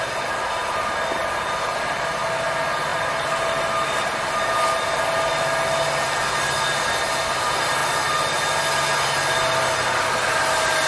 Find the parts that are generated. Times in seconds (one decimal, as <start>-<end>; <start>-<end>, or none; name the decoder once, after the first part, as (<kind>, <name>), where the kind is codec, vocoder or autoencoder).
none